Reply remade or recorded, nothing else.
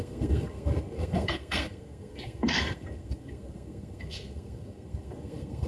remade